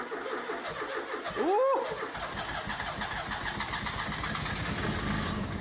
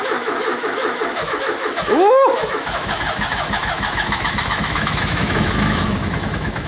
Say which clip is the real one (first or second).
first